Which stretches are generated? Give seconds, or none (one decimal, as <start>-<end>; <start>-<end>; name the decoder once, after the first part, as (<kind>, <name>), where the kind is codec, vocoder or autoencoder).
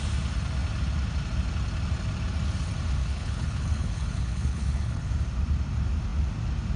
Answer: 3.0-5.1 (codec, HILCodec)